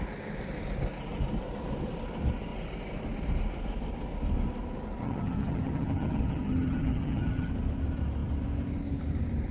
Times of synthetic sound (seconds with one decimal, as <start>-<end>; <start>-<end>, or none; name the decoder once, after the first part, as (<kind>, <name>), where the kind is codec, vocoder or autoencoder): 5.0-7.5 (vocoder, HiFi-GAN)